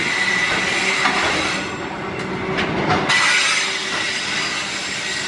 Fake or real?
real